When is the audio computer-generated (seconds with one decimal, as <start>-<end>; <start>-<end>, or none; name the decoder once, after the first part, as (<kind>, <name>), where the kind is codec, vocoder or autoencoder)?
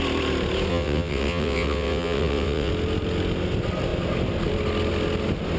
0.7-2.7 (vocoder, WaveNeXt)